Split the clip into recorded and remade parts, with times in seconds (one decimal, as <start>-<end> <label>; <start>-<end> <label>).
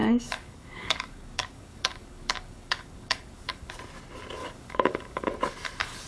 0.0-3.7 remade; 3.7-4.4 recorded; 4.4-5.3 remade; 5.3-6.1 recorded